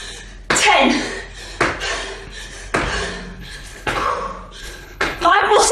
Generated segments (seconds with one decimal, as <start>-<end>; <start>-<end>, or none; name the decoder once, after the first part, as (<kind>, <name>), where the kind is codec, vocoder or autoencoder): 3.4-4.1 (codec, HILCodec); 4.6-5.7